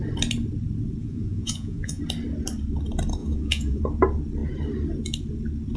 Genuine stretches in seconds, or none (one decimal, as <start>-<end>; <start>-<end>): 0.0-1.0; 2.0-3.2; 3.8-5.8